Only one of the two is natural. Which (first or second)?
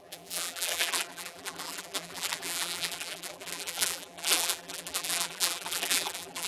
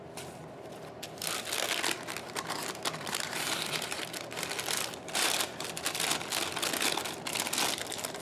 second